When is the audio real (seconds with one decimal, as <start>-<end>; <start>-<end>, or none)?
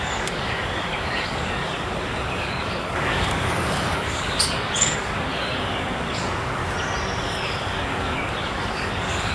6.6-7.2